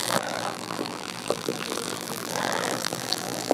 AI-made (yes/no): yes